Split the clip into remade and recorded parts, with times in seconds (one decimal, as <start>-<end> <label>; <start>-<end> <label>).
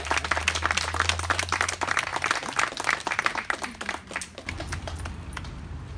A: 0.0-6.0 recorded